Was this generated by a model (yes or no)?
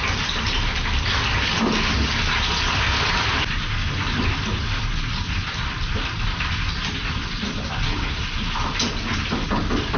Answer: no